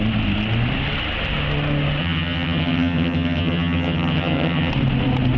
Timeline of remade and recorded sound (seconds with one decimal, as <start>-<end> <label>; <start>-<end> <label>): 0.0-2.0 recorded; 2.0-4.7 remade; 4.7-5.4 recorded